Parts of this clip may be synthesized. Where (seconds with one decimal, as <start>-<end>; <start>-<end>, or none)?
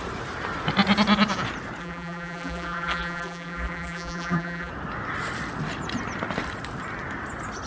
1.8-4.7